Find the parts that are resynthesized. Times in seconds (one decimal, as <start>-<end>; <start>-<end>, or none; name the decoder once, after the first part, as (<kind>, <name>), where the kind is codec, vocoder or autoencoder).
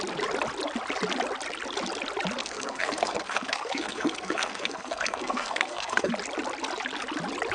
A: 2.4-6.1 (codec, SNAC)